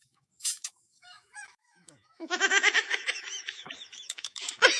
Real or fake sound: fake